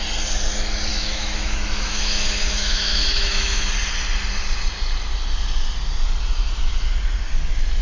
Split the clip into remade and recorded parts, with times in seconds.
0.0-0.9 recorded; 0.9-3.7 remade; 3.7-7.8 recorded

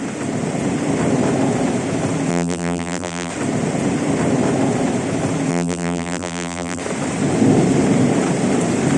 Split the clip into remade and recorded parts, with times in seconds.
0.0-2.3 recorded; 2.3-3.3 remade; 3.3-5.5 recorded; 5.5-6.8 remade; 6.8-9.0 recorded